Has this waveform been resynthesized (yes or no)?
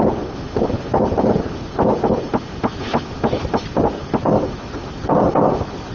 no